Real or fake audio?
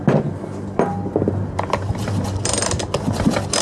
real